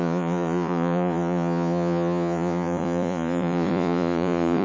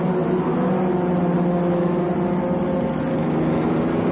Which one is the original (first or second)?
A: second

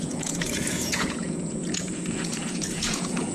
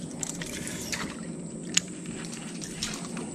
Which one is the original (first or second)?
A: second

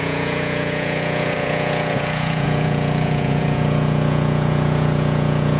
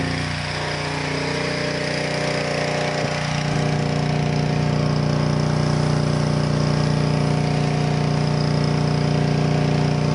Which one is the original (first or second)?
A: second